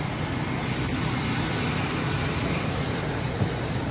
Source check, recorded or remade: recorded